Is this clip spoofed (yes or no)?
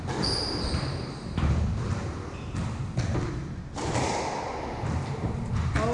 no